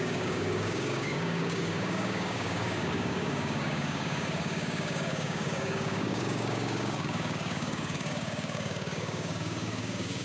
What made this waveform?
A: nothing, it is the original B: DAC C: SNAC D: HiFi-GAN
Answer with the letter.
B